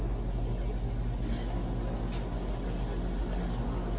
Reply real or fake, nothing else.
real